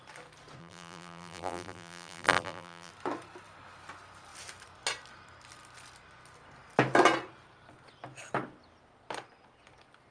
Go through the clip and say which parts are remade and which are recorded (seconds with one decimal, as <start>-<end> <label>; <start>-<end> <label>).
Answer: 0.0-0.6 recorded; 0.6-2.9 remade; 2.9-10.1 recorded